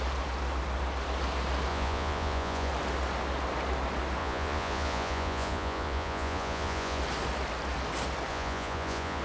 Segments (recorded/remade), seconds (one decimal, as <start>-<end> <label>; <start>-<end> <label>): 0.0-1.7 recorded; 1.7-2.7 remade; 2.7-4.2 recorded; 4.2-7.0 remade; 7.0-8.3 recorded; 8.3-9.2 remade